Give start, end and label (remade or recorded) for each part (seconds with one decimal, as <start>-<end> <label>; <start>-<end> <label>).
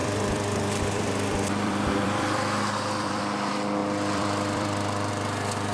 0.0-3.2 remade; 3.2-3.8 recorded; 3.8-5.1 remade; 5.1-5.7 recorded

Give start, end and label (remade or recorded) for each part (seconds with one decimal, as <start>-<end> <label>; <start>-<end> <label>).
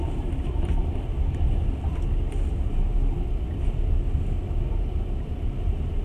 0.0-1.1 remade; 1.1-4.7 recorded; 4.7-6.0 remade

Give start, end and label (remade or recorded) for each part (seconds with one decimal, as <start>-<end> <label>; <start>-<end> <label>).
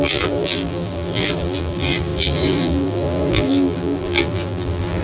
0.0-5.0 remade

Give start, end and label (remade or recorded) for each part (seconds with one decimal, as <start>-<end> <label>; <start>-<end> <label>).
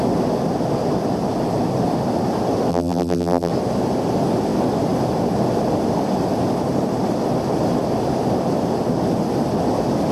0.0-2.7 recorded; 2.7-3.5 remade; 3.5-10.1 recorded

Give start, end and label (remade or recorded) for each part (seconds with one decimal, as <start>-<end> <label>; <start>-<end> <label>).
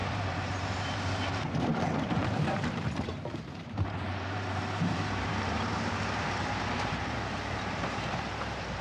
0.0-8.8 remade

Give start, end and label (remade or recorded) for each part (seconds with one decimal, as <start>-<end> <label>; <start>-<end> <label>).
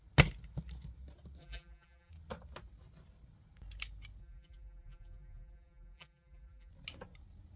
0.0-1.4 recorded; 1.4-2.1 remade; 2.1-4.2 recorded; 4.2-6.7 remade; 6.7-7.6 recorded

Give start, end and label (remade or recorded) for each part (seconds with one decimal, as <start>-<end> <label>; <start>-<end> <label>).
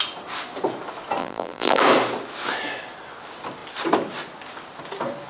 0.0-1.2 recorded; 1.2-1.8 remade; 1.8-5.3 recorded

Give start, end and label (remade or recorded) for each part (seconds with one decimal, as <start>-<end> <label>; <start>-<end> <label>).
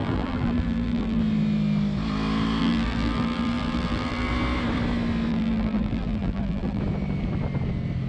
0.0-1.2 remade; 1.2-2.6 recorded; 2.6-4.3 remade; 4.3-5.3 recorded; 5.3-6.8 remade; 6.8-8.1 recorded